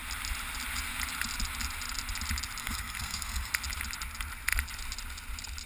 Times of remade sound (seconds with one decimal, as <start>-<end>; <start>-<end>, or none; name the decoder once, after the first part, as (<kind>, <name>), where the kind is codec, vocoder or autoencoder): 2.6-3.5 (codec, SNAC)